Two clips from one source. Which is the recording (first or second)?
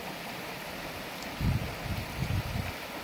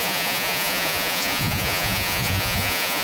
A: first